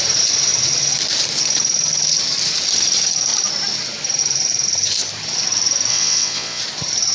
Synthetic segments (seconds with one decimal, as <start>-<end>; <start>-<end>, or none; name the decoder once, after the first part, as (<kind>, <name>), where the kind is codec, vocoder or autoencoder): 5.9-6.6 (vocoder, WaveNeXt)